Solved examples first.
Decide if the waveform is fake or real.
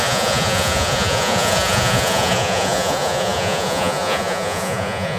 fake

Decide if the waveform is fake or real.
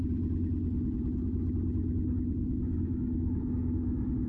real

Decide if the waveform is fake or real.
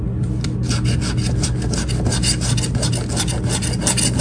real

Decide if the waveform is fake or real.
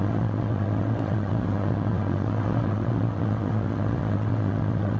fake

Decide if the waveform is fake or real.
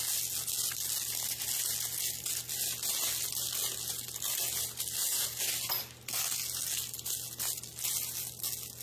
real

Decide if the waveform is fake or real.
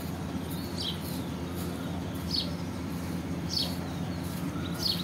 real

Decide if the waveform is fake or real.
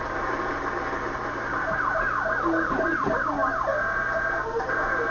real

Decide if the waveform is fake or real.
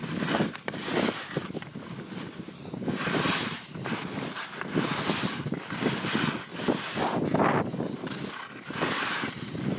real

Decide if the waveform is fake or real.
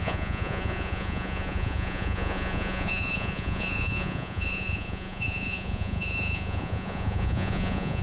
fake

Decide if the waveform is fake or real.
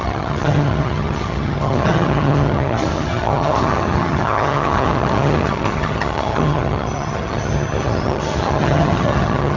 fake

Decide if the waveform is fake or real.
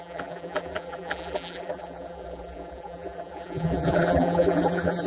fake